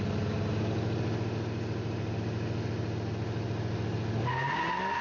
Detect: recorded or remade recorded